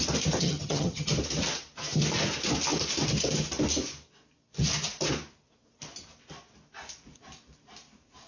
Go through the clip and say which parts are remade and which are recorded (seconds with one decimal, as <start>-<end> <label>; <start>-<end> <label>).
0.0-0.4 recorded; 0.4-1.1 remade; 1.1-8.3 recorded